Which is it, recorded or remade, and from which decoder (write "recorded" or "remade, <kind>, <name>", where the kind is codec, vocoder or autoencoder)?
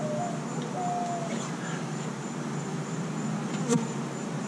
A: recorded